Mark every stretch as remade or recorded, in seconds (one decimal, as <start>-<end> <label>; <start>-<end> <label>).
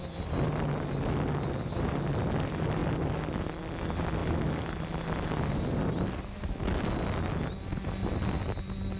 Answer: 0.0-9.0 recorded